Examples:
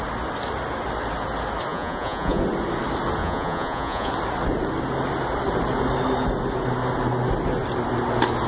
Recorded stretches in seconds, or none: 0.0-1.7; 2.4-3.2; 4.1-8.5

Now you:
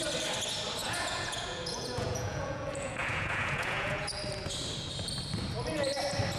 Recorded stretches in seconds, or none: 0.0-0.8; 4.2-6.4

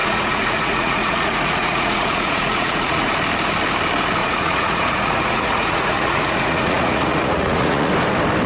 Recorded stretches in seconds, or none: 3.1-4.2; 7.9-8.5